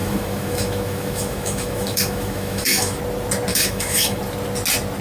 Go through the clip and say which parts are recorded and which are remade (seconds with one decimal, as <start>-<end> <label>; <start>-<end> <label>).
0.0-3.0 remade; 3.0-3.5 recorded; 3.5-4.2 remade; 4.2-5.0 recorded